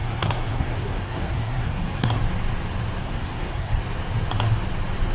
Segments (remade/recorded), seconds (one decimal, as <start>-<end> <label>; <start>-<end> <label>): 0.0-2.1 remade; 2.1-3.0 recorded; 3.0-3.8 remade; 3.8-5.1 recorded